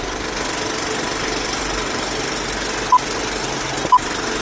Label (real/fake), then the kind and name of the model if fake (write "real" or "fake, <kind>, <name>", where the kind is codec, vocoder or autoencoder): real